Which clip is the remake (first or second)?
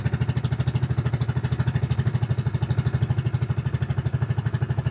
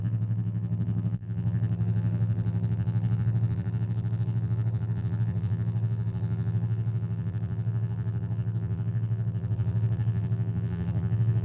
second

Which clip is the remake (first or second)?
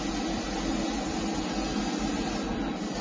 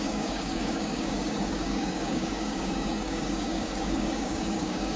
second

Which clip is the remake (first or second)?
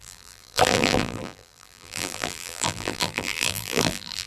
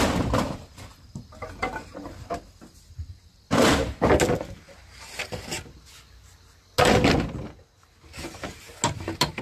first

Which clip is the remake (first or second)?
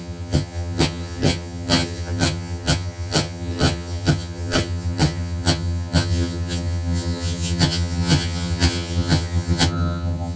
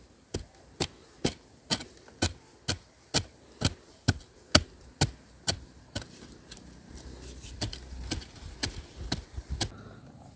first